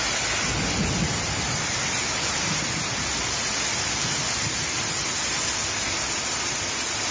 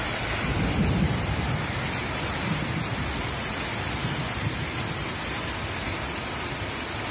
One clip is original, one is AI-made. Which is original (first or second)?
first